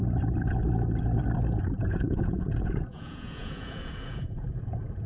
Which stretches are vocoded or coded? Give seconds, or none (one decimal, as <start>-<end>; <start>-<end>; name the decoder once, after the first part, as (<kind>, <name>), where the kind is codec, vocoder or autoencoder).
1.7-5.1 (vocoder, Vocos)